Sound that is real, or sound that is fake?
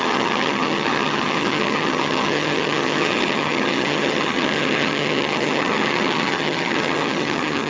fake